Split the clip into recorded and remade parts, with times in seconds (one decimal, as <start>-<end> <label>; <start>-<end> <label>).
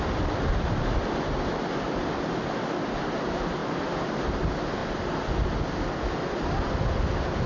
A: 0.0-7.5 recorded